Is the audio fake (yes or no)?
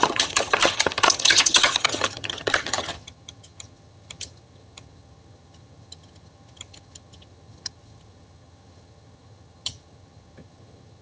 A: yes